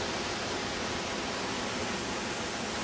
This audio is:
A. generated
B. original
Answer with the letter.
B